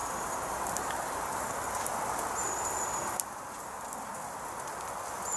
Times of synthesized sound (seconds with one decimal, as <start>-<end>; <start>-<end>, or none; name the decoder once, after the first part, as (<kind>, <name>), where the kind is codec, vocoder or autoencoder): 0.0-1.5 (vocoder, BigVGAN v2)